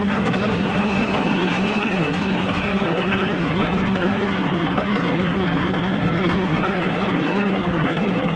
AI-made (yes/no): yes